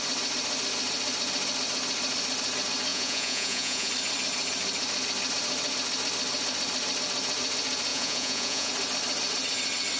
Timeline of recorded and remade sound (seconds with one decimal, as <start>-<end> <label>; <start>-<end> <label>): 0.0-2.9 recorded; 2.9-3.9 remade; 3.9-7.9 recorded; 7.9-8.7 remade; 8.7-10.0 recorded